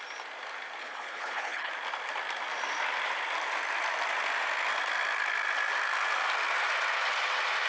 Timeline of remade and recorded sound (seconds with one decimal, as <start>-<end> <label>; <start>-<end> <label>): 0.0-0.8 recorded; 0.8-1.7 remade; 1.7-7.7 recorded